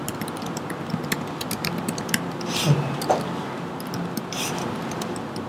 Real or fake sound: real